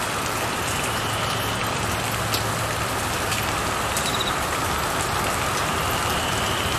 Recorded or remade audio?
remade